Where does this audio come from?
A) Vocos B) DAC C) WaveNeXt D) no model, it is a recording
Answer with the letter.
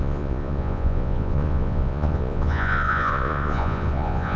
A